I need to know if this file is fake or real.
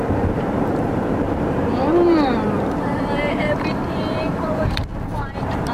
fake